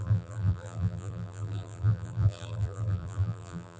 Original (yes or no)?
no